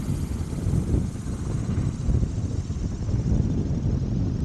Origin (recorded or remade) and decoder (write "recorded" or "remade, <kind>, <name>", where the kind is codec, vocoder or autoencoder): recorded